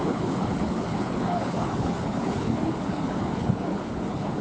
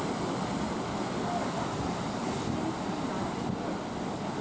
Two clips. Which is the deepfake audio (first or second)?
first